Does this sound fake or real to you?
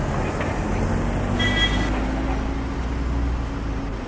real